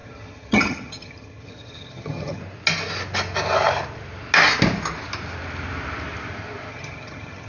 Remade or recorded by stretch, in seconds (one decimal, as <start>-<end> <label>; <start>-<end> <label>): 0.0-2.4 remade; 2.4-6.7 recorded; 6.7-7.5 remade